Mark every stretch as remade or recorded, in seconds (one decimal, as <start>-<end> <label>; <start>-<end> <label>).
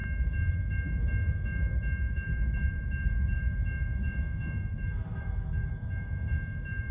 0.0-6.9 remade